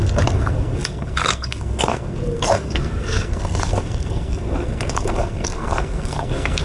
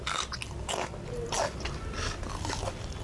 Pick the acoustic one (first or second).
second